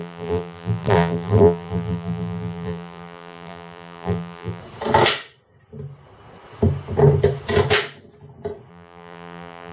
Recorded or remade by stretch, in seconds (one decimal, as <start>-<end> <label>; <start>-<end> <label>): 0.0-4.6 remade; 4.6-8.7 recorded; 8.7-9.7 remade